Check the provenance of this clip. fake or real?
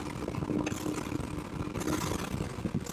real